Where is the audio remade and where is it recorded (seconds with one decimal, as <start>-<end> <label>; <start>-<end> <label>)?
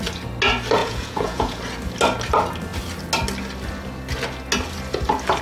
0.0-0.8 recorded; 0.8-1.6 remade; 1.6-5.4 recorded